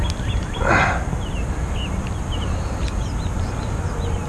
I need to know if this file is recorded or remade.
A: recorded